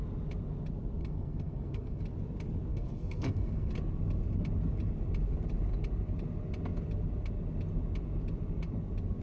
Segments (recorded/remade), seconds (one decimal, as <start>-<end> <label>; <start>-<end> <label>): 0.0-1.0 recorded; 1.0-2.0 remade; 2.0-2.7 recorded; 2.7-3.7 remade; 3.7-9.2 recorded